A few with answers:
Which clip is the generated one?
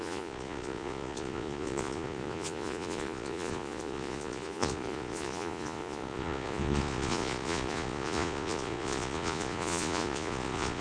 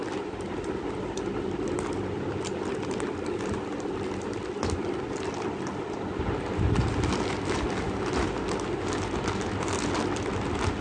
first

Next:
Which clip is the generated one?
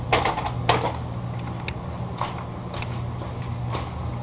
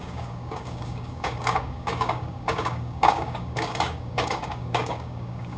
second